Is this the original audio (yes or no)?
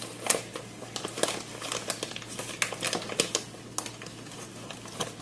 yes